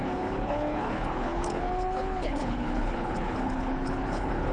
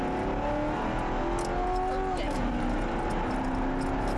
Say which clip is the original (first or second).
second